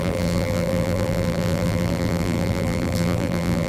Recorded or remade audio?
remade